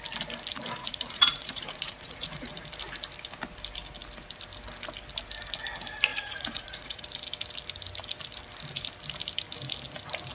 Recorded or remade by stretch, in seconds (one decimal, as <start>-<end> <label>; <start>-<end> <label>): 0.0-0.8 recorded; 0.8-2.5 remade; 2.5-6.1 recorded; 6.1-7.0 remade; 7.0-10.3 recorded